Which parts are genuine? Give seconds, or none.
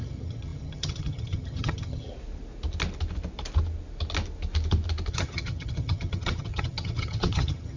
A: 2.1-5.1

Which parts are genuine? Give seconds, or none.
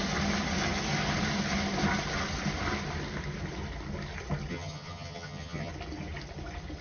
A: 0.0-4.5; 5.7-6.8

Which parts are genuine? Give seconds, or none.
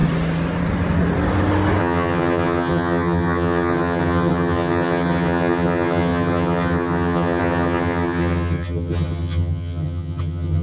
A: 0.0-1.8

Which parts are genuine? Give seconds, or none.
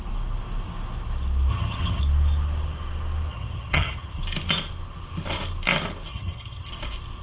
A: 0.0-1.5; 2.0-3.3; 4.2-6.1; 6.7-7.2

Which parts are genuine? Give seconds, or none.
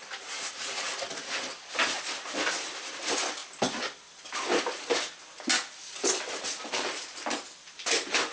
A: 0.0-8.3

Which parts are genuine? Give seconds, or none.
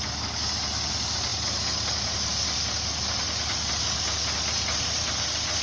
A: 0.0-5.6